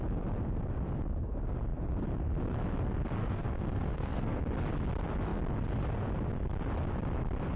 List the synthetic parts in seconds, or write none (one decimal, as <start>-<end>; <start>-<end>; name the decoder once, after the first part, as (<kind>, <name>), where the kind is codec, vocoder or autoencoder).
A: 3.2-4.4 (codec, SNAC)